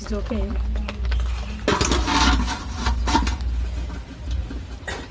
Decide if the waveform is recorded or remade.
recorded